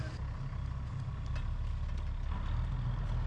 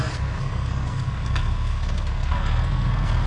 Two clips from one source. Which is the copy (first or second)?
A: second